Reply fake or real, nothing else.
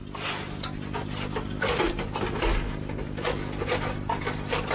real